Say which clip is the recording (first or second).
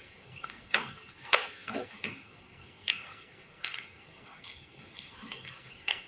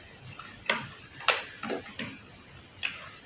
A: second